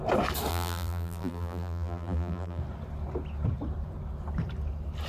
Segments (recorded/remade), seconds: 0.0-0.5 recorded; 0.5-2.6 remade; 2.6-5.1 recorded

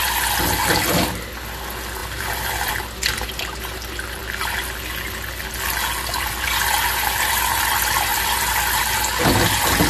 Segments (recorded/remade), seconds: 0.0-2.0 recorded; 2.0-2.7 remade; 2.7-8.1 recorded; 8.1-9.3 remade; 9.3-9.9 recorded

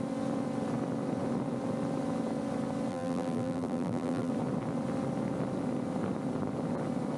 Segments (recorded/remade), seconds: 0.0-2.9 recorded; 2.9-4.3 remade; 4.3-7.2 recorded

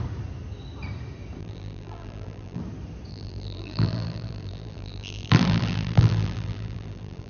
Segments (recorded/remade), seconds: 0.0-1.4 recorded; 1.4-2.6 remade; 2.6-3.1 recorded; 3.1-7.3 remade

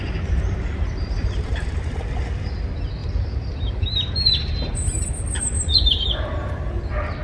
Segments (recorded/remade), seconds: 0.0-0.7 recorded; 0.7-1.8 remade; 1.8-3.0 recorded; 3.0-6.7 remade; 6.7-7.2 recorded

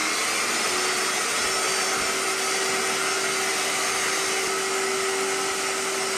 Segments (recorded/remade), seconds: 0.0-6.2 recorded

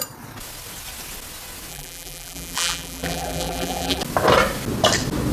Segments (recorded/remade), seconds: 0.0-1.7 recorded; 1.7-4.0 remade; 4.0-5.3 recorded

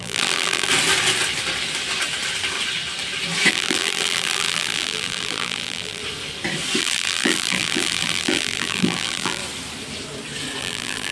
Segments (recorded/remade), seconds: 0.0-0.7 remade; 0.7-3.5 recorded; 3.5-6.0 remade; 6.0-6.8 recorded; 6.8-9.4 remade; 9.4-10.6 recorded; 10.6-11.1 remade